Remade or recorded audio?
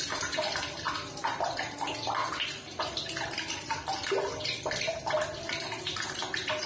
recorded